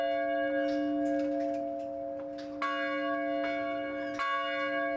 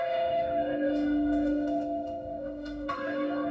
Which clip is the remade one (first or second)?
second